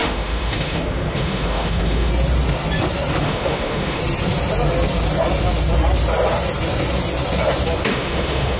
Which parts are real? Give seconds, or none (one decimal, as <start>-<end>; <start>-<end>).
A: 2.1-3.2; 4.0-7.9